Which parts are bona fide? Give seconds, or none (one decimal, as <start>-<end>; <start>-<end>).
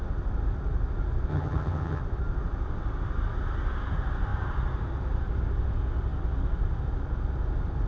0.0-1.3; 2.0-7.9